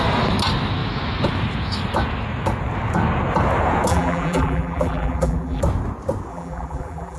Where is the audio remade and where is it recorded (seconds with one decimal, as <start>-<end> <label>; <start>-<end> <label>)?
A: 0.0-3.9 recorded; 3.9-5.6 remade; 5.6-6.3 recorded; 6.3-7.2 remade

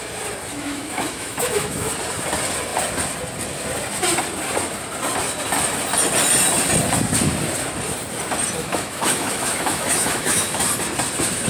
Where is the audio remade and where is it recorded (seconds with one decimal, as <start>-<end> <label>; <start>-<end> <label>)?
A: 0.0-0.5 recorded; 0.5-1.9 remade; 1.9-8.6 recorded; 8.6-10.6 remade; 10.6-11.5 recorded

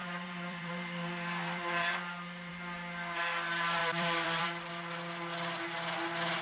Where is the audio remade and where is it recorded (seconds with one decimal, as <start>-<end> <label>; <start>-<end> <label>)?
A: 0.0-2.5 remade; 2.5-3.8 recorded; 3.8-4.7 remade; 4.7-6.4 recorded

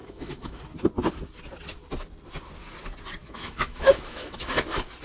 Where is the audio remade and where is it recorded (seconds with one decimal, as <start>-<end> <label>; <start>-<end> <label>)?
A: 0.0-0.6 remade; 0.6-3.2 recorded; 3.2-4.5 remade; 4.5-5.0 recorded